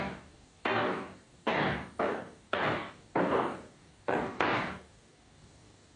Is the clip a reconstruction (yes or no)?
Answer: yes